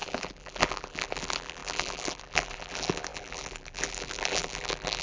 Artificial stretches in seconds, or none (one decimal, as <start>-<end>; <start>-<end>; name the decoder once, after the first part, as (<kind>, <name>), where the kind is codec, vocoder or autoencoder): 0.0-5.0 (vocoder, BigVGAN v2)